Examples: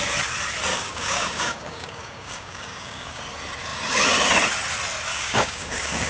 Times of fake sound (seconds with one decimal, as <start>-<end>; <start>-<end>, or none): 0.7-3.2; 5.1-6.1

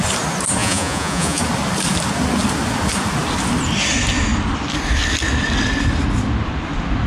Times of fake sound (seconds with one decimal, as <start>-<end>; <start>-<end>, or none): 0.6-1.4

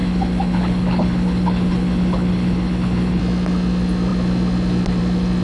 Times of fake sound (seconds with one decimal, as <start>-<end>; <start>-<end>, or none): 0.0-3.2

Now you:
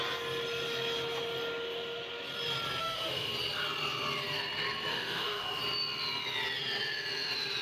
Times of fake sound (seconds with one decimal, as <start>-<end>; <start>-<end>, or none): 2.8-3.3; 4.9-5.6

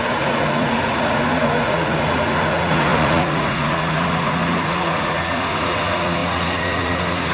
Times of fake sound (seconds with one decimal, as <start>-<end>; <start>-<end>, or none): 0.0-7.3